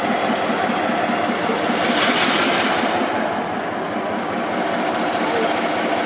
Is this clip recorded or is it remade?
recorded